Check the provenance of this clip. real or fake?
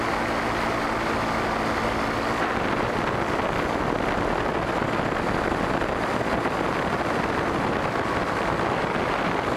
real